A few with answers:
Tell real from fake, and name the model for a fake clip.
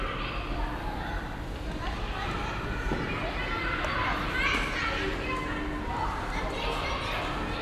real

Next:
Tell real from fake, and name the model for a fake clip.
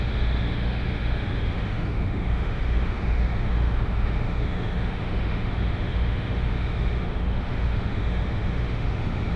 fake, autoencoder, DAC-VAE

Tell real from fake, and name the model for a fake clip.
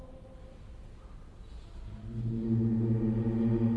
real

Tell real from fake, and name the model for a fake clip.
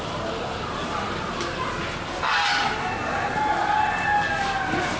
real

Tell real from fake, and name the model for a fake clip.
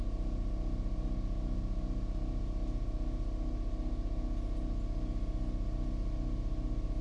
real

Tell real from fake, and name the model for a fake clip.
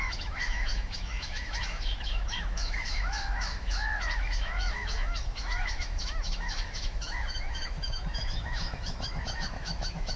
fake, autoencoder, DAC-VAE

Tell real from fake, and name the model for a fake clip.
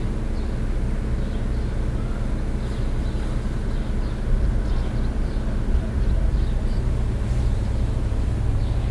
real